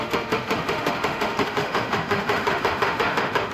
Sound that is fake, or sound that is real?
fake